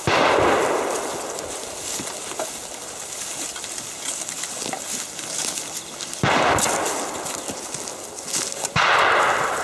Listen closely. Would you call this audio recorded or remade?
recorded